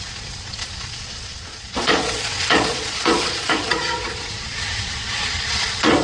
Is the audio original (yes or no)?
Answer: no